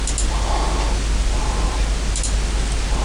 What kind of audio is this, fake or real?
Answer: real